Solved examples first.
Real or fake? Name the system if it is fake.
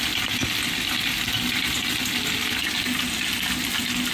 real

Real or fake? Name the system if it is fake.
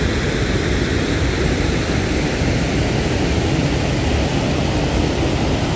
real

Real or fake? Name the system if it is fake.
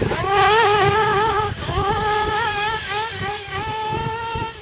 fake, codec, DAC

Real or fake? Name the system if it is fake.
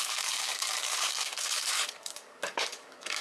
fake, codec, DAC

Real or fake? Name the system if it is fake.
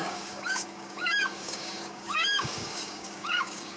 fake, codec, DAC